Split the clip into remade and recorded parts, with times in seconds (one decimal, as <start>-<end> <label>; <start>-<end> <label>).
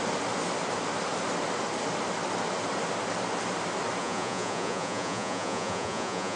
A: 0.0-4.0 recorded; 4.0-6.4 remade